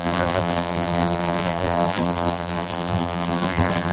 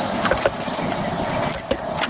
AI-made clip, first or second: first